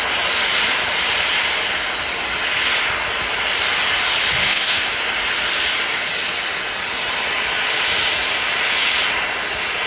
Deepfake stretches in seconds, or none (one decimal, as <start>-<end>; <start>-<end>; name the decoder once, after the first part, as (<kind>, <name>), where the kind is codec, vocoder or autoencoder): 4.4-4.9 (autoencoder, DAC-VAE)